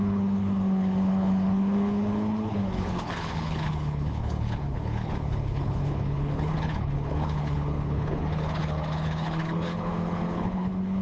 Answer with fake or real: fake